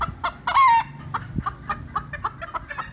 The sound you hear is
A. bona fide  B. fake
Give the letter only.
A